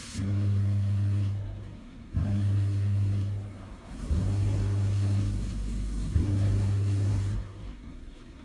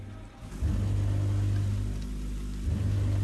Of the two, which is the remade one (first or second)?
first